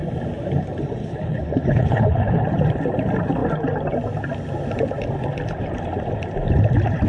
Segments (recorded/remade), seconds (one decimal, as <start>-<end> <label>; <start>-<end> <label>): 0.0-1.0 recorded; 1.0-2.4 remade; 2.4-7.1 recorded